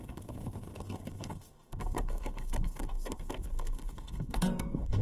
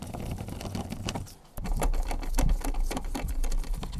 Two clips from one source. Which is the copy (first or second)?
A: first